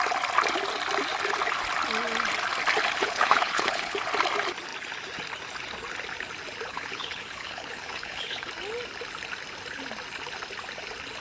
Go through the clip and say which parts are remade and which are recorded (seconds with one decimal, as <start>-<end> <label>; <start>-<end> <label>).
0.0-3.0 recorded; 3.0-4.0 remade; 4.0-6.7 recorded; 6.7-8.5 remade; 8.5-11.2 recorded